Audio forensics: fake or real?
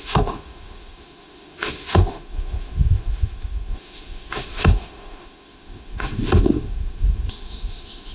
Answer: fake